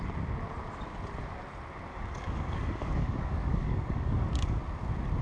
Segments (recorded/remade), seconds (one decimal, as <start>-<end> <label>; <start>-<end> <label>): 0.0-1.9 recorded; 1.9-4.6 remade; 4.6-5.2 recorded